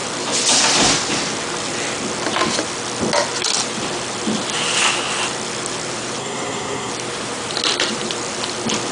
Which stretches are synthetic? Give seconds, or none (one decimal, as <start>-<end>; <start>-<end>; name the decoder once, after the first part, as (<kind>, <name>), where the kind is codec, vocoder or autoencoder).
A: 6.2-6.9 (codec, SNAC)

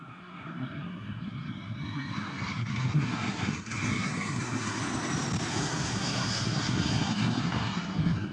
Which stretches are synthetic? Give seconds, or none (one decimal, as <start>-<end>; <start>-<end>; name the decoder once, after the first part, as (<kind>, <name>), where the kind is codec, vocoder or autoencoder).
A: 0.0-4.8 (codec, SNAC); 5.5-8.3

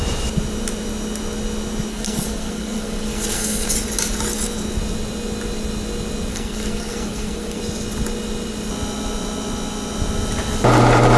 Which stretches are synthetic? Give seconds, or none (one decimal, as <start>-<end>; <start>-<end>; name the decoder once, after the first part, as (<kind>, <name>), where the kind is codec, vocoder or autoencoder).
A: 1.9-3.7 (codec, SNAC); 6.3-7.6

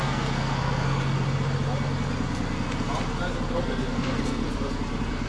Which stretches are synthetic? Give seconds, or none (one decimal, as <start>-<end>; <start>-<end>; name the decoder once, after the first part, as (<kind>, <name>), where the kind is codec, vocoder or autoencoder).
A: 0.0-1.1 (codec, SNAC); 3.6-4.4

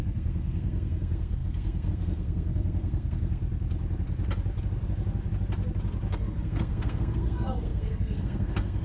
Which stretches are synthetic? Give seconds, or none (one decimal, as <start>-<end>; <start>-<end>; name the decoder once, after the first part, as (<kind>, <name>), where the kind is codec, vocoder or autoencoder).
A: 0.0-3.4 (codec, SNAC); 6.1-8.8